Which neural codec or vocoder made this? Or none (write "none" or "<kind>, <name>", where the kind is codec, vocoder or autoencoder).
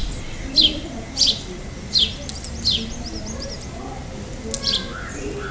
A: none